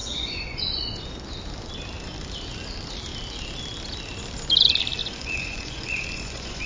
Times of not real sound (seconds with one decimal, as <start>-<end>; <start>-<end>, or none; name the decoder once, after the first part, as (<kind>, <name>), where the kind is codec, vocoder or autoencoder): 0.0-1.1 (vocoder, Vocos); 5.0-6.7